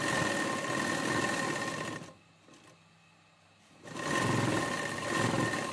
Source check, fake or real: real